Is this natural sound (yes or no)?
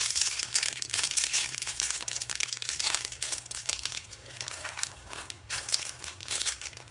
no